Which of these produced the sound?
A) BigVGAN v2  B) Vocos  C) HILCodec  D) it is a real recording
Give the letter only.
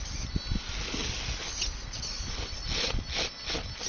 D